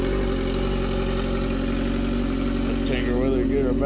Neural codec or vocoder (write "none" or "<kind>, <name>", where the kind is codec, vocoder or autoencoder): none